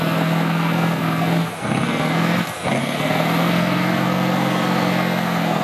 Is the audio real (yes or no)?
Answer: no